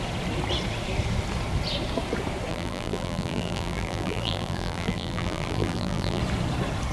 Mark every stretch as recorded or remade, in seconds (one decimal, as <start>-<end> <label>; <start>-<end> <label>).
0.0-2.5 recorded; 2.5-6.2 remade; 6.2-6.9 recorded